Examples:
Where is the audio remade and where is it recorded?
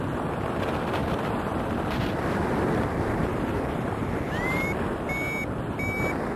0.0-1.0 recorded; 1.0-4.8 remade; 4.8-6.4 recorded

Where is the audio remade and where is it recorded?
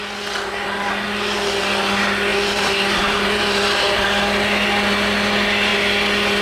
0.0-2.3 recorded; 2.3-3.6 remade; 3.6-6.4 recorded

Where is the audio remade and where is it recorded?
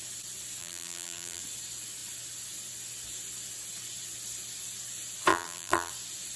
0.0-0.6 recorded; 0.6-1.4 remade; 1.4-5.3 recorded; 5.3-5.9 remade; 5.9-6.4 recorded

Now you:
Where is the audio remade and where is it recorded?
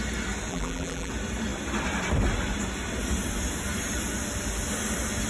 0.0-0.5 recorded; 0.5-1.1 remade; 1.1-5.3 recorded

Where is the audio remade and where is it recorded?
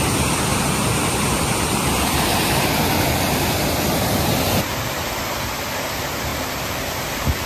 0.0-0.5 recorded; 0.5-5.0 remade; 5.0-6.3 recorded; 6.3-7.5 remade